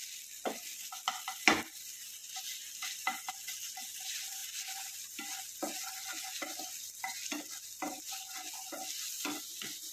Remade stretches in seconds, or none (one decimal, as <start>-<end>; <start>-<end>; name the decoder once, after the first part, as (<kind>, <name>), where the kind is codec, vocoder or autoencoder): none